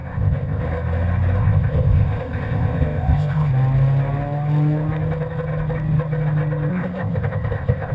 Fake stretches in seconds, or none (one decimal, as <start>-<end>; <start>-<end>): 0.0-0.6; 1.4-3.5; 6.7-7.9